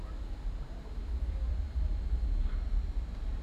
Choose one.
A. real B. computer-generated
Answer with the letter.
A